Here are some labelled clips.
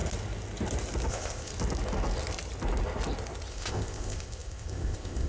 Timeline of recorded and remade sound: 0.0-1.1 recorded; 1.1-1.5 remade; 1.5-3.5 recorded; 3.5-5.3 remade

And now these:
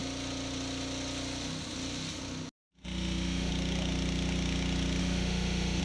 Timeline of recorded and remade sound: 0.0-2.8 recorded; 2.8-3.5 remade; 3.5-5.0 recorded; 5.0-5.8 remade

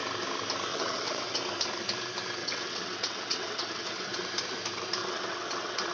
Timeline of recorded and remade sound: 0.0-0.7 recorded; 0.7-1.4 remade; 1.4-2.4 recorded; 2.4-4.2 remade; 4.2-5.0 recorded; 5.0-5.9 remade

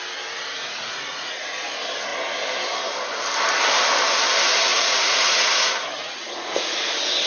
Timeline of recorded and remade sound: 0.0-0.5 recorded; 0.5-1.4 remade; 1.4-4.7 recorded; 4.7-6.8 remade; 6.8-7.3 recorded

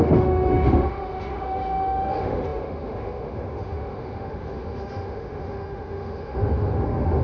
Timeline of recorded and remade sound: 0.0-7.2 remade

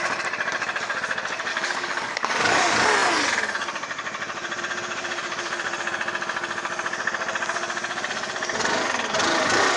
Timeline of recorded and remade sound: 0.0-1.5 recorded; 1.5-2.6 remade; 2.6-9.8 recorded

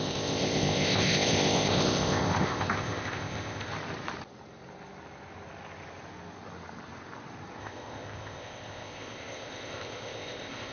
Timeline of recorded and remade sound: 0.0-3.7 remade; 3.7-7.6 recorded; 7.6-10.7 remade